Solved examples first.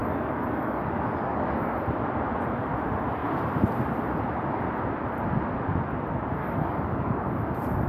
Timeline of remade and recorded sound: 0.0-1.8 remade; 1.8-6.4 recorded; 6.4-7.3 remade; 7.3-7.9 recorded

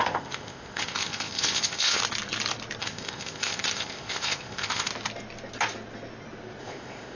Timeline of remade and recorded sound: 0.0-2.0 remade; 2.0-2.8 recorded; 2.8-4.9 remade; 4.9-6.6 recorded; 6.6-7.1 remade

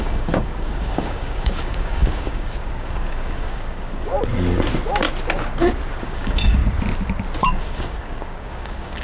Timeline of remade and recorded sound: 0.0-4.1 remade; 4.1-6.0 recorded; 6.0-6.6 remade; 6.6-7.4 recorded; 7.4-9.0 remade

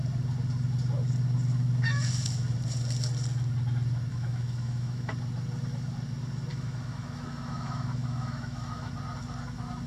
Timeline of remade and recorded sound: 0.0-4.1 recorded; 4.1-5.1 remade; 5.1-6.5 recorded; 6.5-8.9 remade; 8.9-9.9 recorded

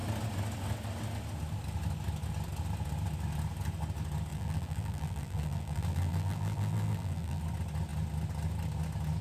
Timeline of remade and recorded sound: 0.0-4.3 recorded; 4.3-7.4 remade; 7.4-9.2 recorded